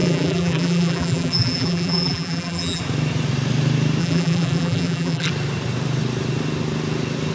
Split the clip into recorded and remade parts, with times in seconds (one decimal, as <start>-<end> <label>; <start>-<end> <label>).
0.0-2.8 remade; 2.8-4.0 recorded; 4.0-5.3 remade; 5.3-7.3 recorded